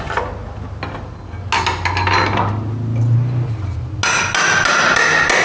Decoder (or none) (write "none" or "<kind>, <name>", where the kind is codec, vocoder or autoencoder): none